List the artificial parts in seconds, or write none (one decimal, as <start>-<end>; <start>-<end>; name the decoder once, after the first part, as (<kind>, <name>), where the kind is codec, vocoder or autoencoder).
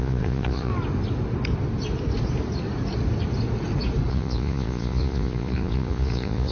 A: 0.0-0.7 (vocoder, Vocos); 4.1-6.5